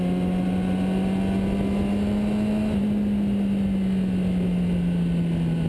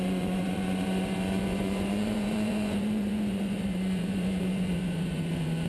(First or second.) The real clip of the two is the first